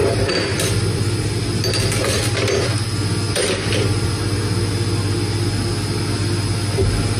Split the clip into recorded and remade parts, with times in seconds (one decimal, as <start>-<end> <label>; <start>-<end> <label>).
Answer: 0.0-1.3 remade; 1.3-7.2 recorded